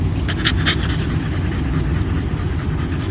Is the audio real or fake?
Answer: real